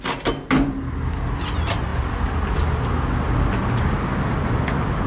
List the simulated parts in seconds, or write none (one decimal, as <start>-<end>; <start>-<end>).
none